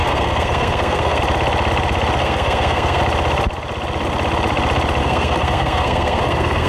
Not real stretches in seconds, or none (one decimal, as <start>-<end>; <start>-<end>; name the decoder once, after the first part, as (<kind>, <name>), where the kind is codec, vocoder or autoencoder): 0.0-1.2 (codec, SNAC); 2.2-3.0; 5.0-6.7